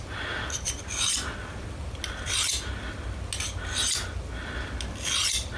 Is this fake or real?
real